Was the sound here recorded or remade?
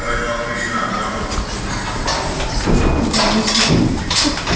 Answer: recorded